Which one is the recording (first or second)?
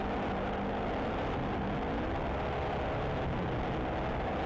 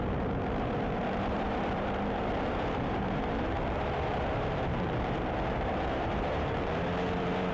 first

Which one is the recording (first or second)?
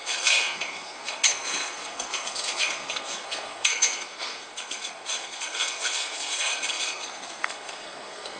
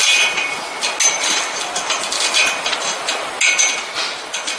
second